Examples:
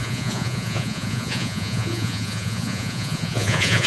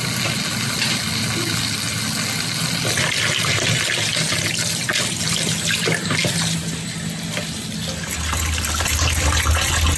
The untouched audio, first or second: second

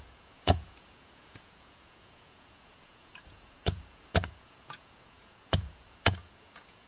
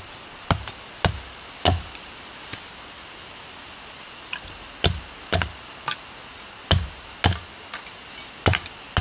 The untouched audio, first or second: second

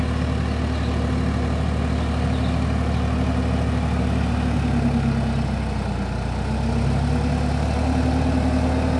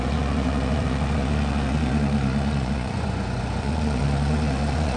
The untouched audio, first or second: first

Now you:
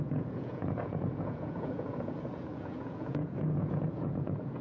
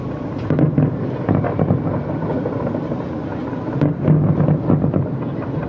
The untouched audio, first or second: second